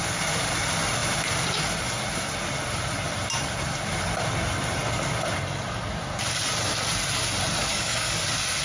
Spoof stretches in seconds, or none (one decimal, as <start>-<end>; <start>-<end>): 7.6-8.2